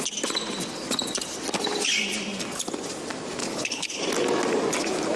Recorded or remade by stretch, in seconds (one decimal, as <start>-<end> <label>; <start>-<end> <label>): 0.0-3.4 recorded; 3.4-4.0 remade; 4.0-5.2 recorded